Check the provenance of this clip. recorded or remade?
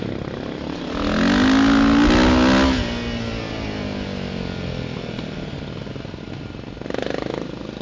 recorded